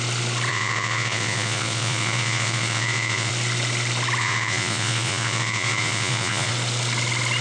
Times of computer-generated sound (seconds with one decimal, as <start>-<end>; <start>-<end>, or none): 0.5-3.3; 4.2-6.5